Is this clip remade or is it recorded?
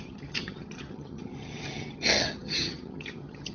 remade